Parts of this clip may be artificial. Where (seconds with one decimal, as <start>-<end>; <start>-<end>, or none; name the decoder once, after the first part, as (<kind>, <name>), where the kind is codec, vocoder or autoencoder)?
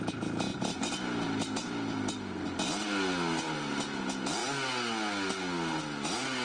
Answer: none